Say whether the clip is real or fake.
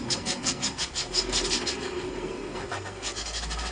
fake